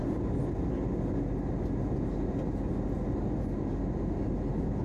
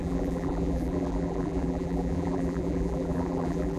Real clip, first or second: first